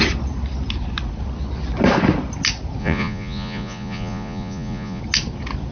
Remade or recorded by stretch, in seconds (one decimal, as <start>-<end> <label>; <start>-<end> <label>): 0.0-2.8 recorded; 2.8-5.0 remade; 5.0-5.7 recorded